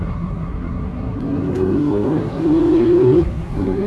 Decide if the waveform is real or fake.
fake